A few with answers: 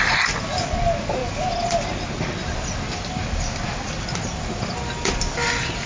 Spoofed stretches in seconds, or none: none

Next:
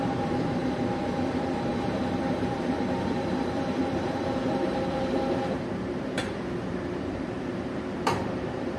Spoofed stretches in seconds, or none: 0.0-0.6 (vocoder, BigVGAN v2); 1.5-8.8

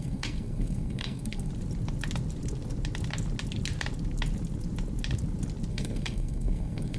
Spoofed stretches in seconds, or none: 0.0-1.5 (codec, SNAC); 5.7-7.0

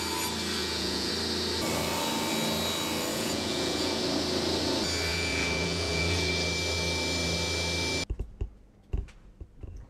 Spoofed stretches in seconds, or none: 0.6-1.1 (vocoder, Vocos); 3.1-4.0; 5.1-6.3